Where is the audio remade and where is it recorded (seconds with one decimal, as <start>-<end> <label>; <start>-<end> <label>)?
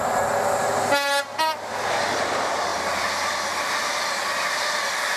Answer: 0.0-5.2 recorded